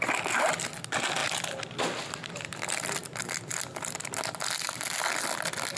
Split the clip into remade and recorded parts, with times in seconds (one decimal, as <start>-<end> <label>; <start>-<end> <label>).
0.0-5.8 recorded

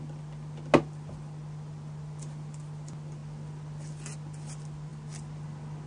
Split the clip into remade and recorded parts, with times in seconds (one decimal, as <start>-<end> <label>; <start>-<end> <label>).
0.0-5.9 recorded

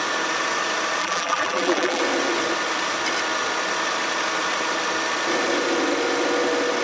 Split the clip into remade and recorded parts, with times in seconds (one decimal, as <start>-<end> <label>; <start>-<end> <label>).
0.0-1.0 recorded; 1.0-2.0 remade; 2.0-6.8 recorded

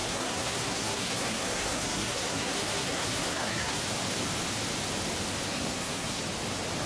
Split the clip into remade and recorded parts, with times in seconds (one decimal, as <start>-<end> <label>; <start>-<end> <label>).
0.0-3.8 remade; 3.8-5.5 recorded; 5.5-6.2 remade; 6.2-6.9 recorded

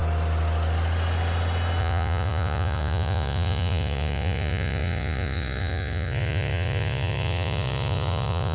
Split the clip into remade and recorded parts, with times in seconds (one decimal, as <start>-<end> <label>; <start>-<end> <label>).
0.0-1.8 recorded; 1.8-8.5 remade

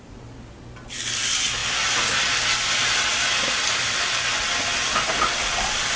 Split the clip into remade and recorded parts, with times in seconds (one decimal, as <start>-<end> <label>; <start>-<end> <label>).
0.0-6.0 recorded

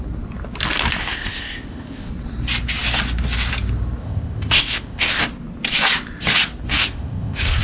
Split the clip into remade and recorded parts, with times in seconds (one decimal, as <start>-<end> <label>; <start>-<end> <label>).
0.0-1.0 recorded; 1.0-2.1 remade; 2.1-4.0 recorded; 4.0-5.2 remade; 5.2-6.8 recorded; 6.8-7.6 remade

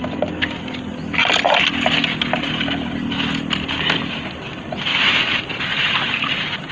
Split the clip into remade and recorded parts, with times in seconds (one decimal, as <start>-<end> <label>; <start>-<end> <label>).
0.0-4.0 recorded; 4.0-6.7 remade